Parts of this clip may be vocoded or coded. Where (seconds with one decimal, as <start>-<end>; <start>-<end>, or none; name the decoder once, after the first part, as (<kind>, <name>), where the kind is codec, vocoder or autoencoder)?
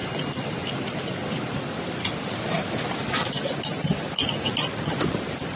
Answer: none